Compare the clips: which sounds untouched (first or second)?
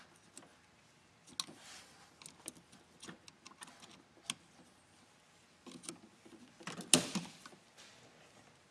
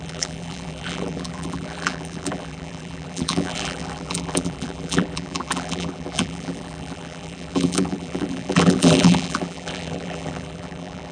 first